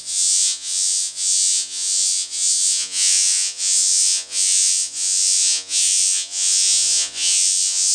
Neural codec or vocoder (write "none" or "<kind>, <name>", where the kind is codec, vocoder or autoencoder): vocoder, Vocos